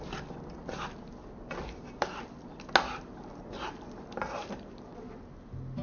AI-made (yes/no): no